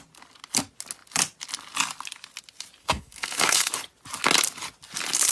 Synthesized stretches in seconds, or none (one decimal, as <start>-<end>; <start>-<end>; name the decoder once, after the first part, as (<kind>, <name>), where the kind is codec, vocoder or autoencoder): 2.8-3.7 (codec, SNAC)